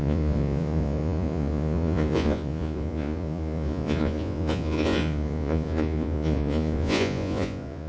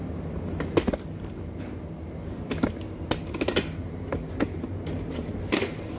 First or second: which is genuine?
second